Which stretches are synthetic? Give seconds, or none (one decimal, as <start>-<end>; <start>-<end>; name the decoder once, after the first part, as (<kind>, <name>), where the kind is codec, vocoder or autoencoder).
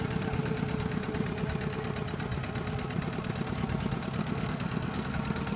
4.2-5.1 (codec, SNAC)